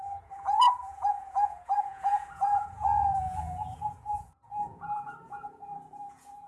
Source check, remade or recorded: remade